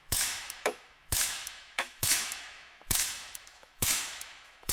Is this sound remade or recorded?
remade